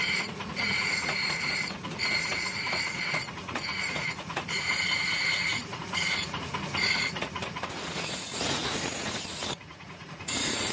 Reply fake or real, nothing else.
fake